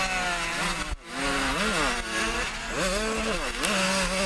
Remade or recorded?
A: recorded